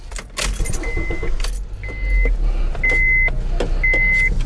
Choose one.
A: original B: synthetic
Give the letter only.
A